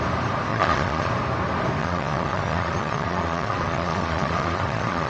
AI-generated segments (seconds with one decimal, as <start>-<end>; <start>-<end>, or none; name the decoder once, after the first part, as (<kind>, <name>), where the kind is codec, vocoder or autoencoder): 0.5-1.1 (vocoder, Vocos); 1.8-5.1